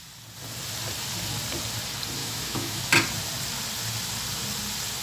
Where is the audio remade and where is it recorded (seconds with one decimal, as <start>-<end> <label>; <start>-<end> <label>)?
0.0-2.2 recorded; 2.2-2.8 remade; 2.8-5.0 recorded